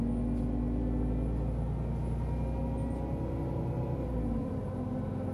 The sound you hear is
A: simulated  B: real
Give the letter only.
B